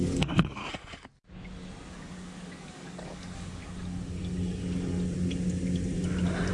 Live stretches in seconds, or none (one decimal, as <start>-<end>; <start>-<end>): 0.6-1.9; 3.6-6.5